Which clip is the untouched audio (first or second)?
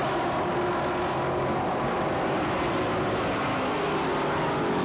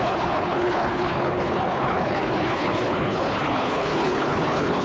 first